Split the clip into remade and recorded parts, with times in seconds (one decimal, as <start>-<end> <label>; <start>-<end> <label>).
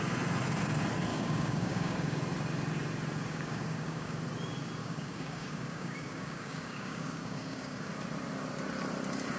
0.0-1.1 recorded; 1.1-2.2 remade; 2.2-3.3 recorded; 3.3-4.2 remade; 4.2-4.8 recorded; 4.8-7.9 remade; 7.9-9.4 recorded